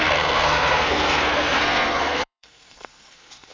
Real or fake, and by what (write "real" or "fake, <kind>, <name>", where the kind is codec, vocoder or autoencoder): fake, codec, SNAC